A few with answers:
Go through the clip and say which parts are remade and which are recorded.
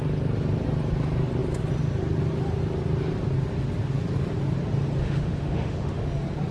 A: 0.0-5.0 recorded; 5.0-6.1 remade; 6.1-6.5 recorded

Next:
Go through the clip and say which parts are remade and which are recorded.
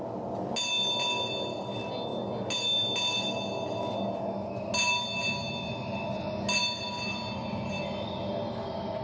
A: 0.0-9.0 recorded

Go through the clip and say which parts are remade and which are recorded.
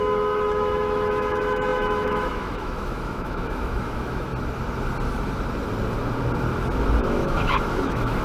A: 0.0-4.3 remade; 4.3-7.0 recorded; 7.0-8.2 remade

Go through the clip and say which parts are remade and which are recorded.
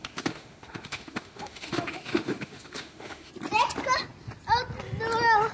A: 0.0-3.3 remade; 3.3-5.5 recorded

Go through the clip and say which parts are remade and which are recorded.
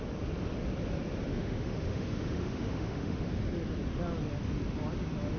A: 0.0-1.3 recorded; 1.3-3.3 remade; 3.3-5.4 recorded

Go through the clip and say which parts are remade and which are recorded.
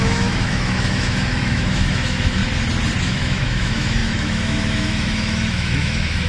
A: 0.0-2.4 remade; 2.4-3.0 recorded; 3.0-6.3 remade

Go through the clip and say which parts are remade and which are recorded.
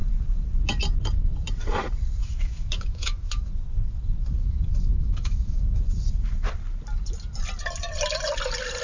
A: 0.0-2.2 recorded; 2.2-3.5 remade; 3.5-4.4 recorded; 4.4-5.8 remade; 5.8-8.8 recorded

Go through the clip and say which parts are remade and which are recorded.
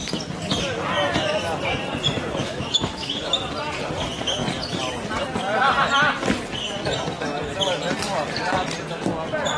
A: 0.0-2.4 recorded; 2.4-3.3 remade; 3.3-9.6 recorded